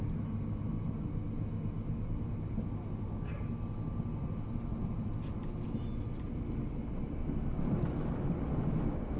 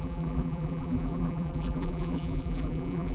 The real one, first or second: first